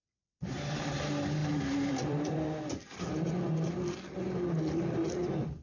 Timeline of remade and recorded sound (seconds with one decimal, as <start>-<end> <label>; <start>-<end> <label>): 0.0-0.9 remade; 0.9-1.4 recorded; 1.4-3.0 remade; 3.0-5.6 recorded